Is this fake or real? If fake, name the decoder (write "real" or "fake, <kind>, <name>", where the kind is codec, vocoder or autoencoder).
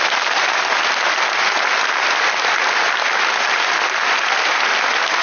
fake, vocoder, BigVGAN v2